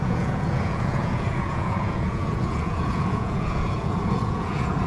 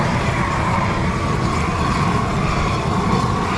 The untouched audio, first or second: second